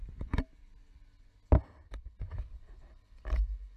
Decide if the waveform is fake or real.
real